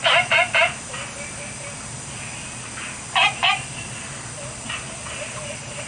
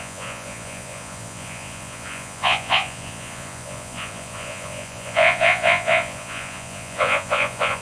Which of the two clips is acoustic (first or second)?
first